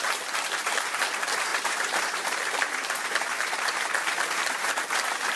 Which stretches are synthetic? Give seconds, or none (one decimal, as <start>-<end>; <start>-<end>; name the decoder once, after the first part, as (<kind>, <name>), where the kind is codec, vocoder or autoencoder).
1.5-4.7 (vocoder, BigVGAN v2)